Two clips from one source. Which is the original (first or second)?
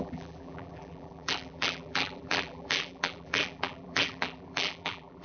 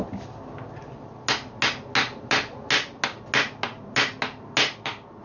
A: second